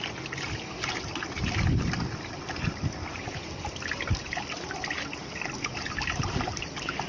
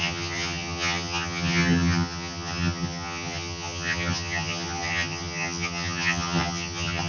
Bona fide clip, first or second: first